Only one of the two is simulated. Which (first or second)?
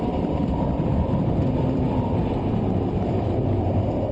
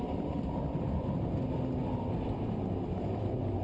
first